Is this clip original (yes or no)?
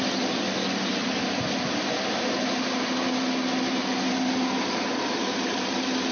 yes